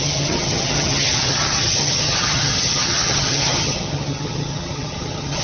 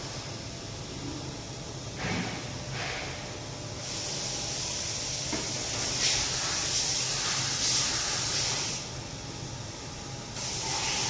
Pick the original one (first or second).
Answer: second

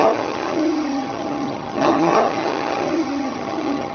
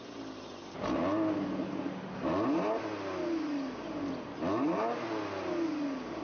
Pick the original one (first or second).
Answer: second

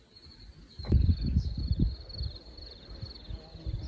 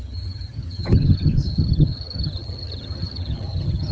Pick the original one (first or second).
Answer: first